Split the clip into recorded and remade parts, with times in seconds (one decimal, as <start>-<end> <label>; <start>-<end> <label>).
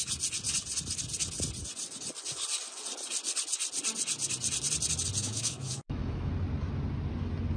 0.0-5.2 recorded; 5.2-6.3 remade; 6.3-7.6 recorded